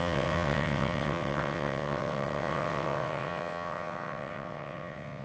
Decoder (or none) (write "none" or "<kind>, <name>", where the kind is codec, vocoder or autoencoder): vocoder, WaveNeXt